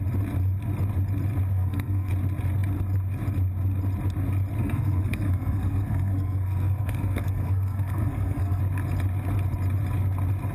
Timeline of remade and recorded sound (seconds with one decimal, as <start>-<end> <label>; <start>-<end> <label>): 0.0-1.5 recorded; 1.5-2.1 remade; 2.1-4.6 recorded; 4.6-8.6 remade; 8.6-10.5 recorded